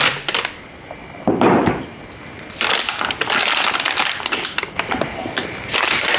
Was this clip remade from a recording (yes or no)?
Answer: yes